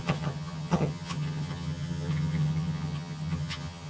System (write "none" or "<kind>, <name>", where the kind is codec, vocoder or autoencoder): vocoder, HiFi-GAN